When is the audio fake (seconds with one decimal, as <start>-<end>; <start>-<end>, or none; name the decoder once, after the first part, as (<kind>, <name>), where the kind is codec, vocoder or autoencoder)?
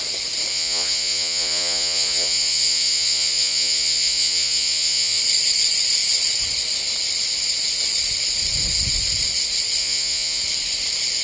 0.5-5.2 (vocoder, Vocos); 9.8-10.4